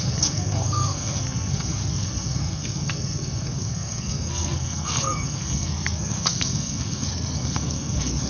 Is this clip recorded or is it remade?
remade